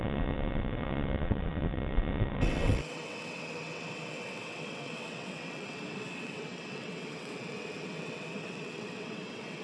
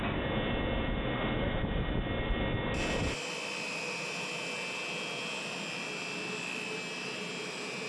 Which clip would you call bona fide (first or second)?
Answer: second